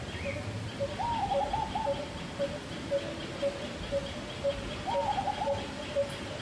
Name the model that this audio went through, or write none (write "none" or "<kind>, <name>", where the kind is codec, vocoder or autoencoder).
none